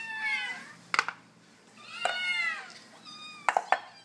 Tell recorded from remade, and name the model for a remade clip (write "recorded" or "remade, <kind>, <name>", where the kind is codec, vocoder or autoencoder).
recorded